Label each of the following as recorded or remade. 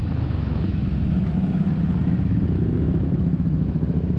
remade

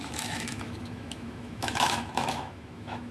remade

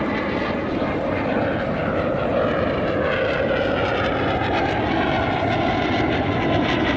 recorded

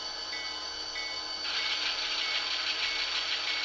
recorded